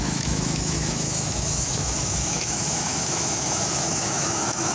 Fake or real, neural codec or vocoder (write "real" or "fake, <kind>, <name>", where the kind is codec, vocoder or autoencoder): fake, autoencoder, DAC-VAE